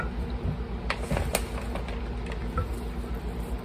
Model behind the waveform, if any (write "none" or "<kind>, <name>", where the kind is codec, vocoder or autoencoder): none